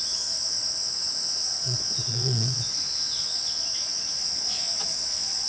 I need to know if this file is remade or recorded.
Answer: remade